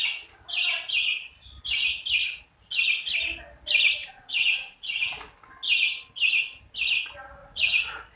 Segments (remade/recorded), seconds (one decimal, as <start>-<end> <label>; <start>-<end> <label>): 0.0-4.0 recorded; 4.0-5.0 remade; 5.0-7.4 recorded; 7.4-8.2 remade